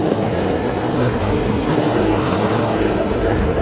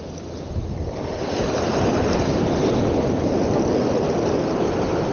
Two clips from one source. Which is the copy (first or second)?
first